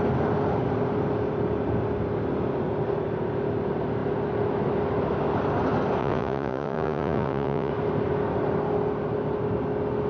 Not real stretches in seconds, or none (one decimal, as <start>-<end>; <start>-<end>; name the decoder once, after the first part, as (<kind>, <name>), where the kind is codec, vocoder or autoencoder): 6.0-7.7 (vocoder, Vocos)